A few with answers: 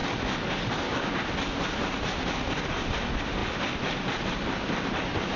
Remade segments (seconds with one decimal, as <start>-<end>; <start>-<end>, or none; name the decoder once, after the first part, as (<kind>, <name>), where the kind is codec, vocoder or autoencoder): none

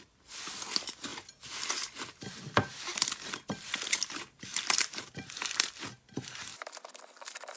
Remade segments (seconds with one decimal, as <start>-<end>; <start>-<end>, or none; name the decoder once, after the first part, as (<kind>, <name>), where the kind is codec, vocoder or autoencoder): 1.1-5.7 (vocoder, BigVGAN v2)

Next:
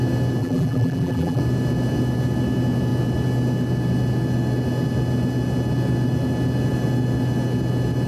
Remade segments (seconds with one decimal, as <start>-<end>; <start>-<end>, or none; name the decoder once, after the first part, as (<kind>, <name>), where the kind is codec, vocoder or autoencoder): 0.4-1.4 (vocoder, BigVGAN v2)